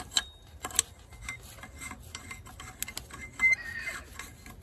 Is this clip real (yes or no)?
yes